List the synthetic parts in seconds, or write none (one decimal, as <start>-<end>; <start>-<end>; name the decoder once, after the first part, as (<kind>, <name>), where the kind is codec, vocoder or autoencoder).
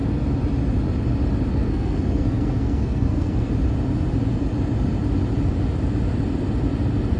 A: 1.5-3.5 (codec, SNAC)